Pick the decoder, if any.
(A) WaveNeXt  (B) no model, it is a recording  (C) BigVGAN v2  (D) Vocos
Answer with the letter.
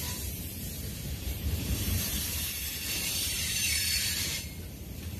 C